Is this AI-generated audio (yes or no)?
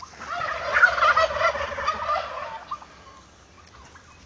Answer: no